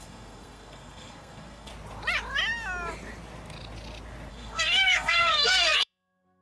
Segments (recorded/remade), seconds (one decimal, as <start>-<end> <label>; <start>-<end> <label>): 0.0-1.7 remade; 1.7-4.3 recorded; 4.3-6.4 remade